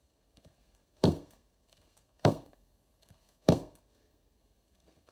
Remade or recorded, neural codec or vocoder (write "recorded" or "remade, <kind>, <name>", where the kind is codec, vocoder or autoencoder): remade, codec, SNAC